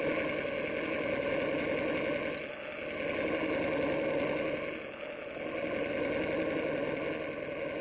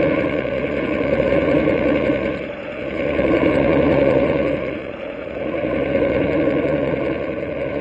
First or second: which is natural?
first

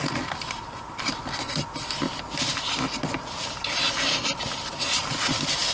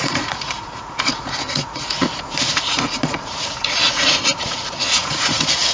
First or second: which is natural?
first